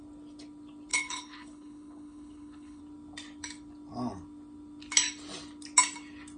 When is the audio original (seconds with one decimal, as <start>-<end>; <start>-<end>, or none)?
0.0-0.9; 2.8-6.4